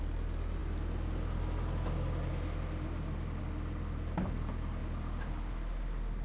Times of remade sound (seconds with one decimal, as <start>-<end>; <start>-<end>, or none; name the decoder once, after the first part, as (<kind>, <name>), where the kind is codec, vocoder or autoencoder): none